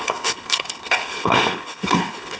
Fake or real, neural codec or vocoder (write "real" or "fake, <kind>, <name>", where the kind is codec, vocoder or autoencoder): fake, codec, HILCodec